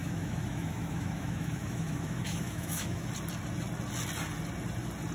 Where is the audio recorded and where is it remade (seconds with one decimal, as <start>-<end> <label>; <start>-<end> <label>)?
0.0-3.1 remade; 3.1-5.1 recorded

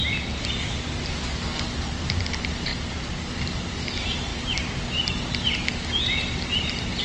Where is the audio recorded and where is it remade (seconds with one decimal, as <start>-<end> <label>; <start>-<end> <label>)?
0.0-2.7 remade; 2.7-3.4 recorded; 3.4-7.0 remade

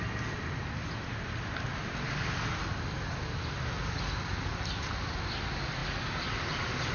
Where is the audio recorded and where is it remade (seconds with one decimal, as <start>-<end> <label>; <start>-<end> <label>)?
0.0-6.9 recorded

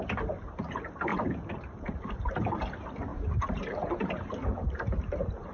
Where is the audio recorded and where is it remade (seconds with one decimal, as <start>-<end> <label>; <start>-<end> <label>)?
0.0-1.1 recorded; 1.1-2.3 remade; 2.3-3.1 recorded; 3.1-4.1 remade; 4.1-4.5 recorded; 4.5-5.5 remade